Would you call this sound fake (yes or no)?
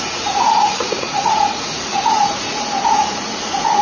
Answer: yes